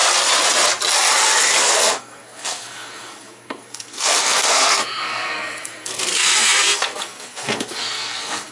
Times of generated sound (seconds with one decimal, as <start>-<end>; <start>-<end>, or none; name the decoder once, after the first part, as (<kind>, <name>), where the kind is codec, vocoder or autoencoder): 1.6-8.5 (codec, SNAC)

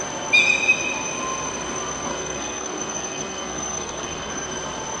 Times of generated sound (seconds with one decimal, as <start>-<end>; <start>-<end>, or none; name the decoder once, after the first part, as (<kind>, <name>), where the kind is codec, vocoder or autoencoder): 2.1-4.3 (codec, SNAC)

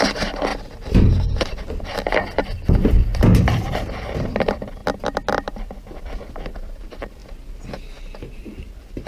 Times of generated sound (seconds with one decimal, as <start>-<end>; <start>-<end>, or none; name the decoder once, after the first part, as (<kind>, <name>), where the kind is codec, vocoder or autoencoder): 0.0-0.5 (vocoder, BigVGAN v2); 3.4-4.8; 5.5-7.2; 8.4-9.1

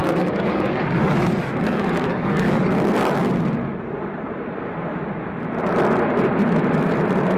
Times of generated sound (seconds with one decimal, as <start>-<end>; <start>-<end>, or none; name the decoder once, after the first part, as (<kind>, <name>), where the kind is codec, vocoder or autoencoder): 0.0-2.7 (codec, DAC)

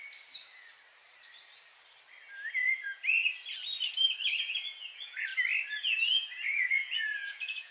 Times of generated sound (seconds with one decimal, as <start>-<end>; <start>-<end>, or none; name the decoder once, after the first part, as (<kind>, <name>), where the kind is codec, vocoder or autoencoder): 2.5-3.0 (vocoder, Vocos); 4.4-5.3; 5.8-7.7

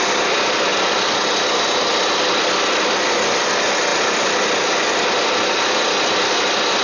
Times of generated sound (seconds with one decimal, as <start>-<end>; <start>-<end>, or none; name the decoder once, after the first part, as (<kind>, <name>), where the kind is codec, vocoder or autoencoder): none

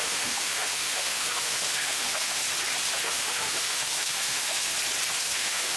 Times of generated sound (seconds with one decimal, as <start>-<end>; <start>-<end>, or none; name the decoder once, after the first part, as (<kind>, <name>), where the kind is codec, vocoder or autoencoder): 0.0-2.4 (autoencoder, DAC-VAE); 3.0-4.7; 5.2-5.8